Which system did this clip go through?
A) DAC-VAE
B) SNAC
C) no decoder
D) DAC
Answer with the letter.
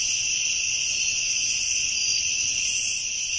C